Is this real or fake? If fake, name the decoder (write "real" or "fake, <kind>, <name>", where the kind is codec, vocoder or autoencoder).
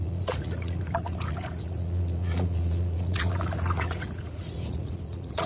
fake, vocoder, Vocos